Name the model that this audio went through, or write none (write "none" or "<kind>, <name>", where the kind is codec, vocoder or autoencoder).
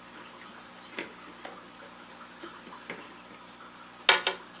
none